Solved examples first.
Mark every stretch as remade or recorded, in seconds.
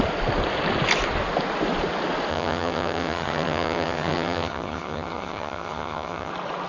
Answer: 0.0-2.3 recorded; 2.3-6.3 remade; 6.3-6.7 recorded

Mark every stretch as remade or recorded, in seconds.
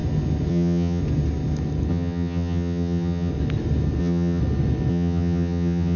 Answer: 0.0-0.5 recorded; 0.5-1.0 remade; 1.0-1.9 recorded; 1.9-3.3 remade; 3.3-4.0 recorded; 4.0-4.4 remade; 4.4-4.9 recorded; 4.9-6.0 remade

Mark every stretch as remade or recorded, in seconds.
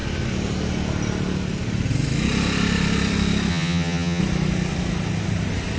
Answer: 0.0-3.5 recorded; 3.5-4.2 remade; 4.2-5.8 recorded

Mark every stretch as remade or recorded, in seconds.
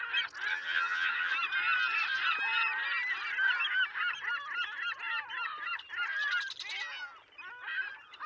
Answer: 0.0-0.5 recorded; 0.5-1.3 remade; 1.3-8.3 recorded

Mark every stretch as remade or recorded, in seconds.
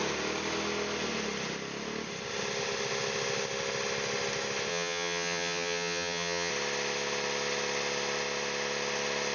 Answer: 0.0-4.7 recorded; 4.7-6.5 remade; 6.5-9.3 recorded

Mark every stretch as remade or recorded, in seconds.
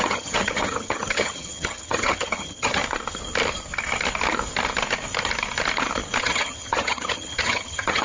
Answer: 0.0-2.8 remade; 2.8-6.2 recorded; 6.2-8.0 remade